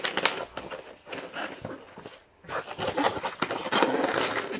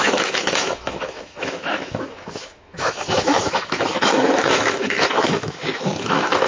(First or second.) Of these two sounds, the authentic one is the first